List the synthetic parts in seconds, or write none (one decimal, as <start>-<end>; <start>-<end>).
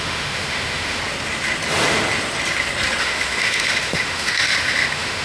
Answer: 0.0-1.0; 3.0-5.2